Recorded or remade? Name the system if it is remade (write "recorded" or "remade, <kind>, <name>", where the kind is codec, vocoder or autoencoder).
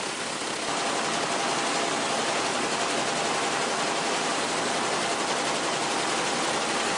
recorded